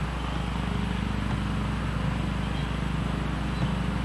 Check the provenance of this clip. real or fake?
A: real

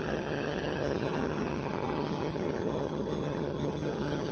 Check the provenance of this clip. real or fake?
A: fake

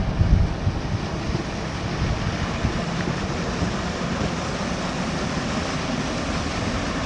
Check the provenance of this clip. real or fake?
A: real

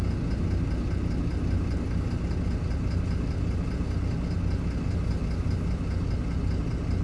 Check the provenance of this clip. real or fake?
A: real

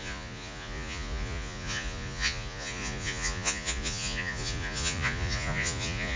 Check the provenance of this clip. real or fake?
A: fake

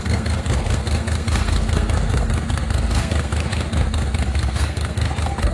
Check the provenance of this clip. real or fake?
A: fake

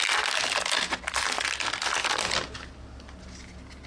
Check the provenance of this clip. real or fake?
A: real